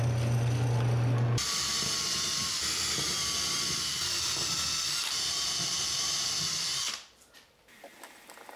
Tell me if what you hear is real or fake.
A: real